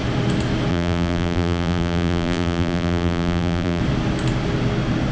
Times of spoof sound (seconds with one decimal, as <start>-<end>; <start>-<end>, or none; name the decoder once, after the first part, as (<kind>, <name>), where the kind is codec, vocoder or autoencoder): 0.7-3.8 (vocoder, BigVGAN v2)